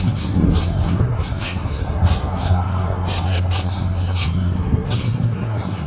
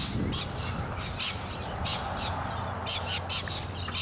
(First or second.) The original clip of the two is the second